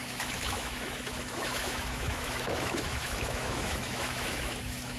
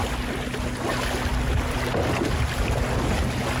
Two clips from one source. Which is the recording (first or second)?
second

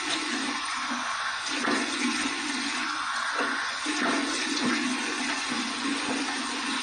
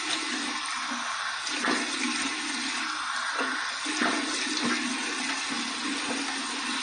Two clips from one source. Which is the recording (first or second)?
second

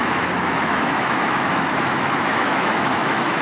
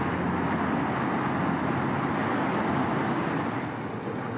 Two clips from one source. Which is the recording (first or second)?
second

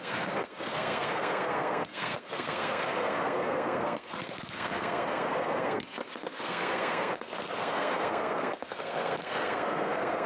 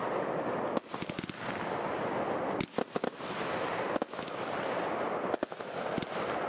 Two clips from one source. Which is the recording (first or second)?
second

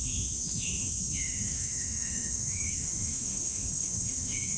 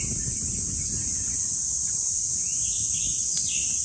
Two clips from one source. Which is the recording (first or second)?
second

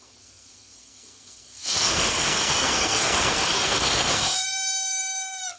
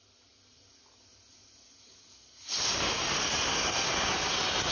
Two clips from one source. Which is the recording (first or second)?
second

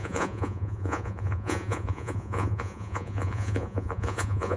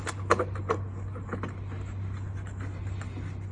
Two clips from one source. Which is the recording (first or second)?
second